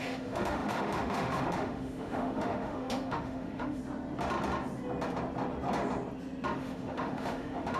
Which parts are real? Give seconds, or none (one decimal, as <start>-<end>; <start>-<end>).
3.8-6.6